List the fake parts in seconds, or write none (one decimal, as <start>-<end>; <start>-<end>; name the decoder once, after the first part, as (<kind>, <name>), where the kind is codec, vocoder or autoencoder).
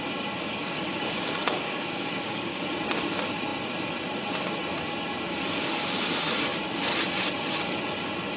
0.6-2.6 (codec, DAC)